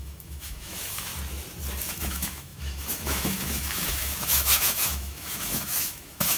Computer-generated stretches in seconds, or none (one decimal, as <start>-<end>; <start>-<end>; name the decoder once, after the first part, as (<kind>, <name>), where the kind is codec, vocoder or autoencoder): 0.0-1.1 (autoencoder, DAC-VAE); 1.8-6.4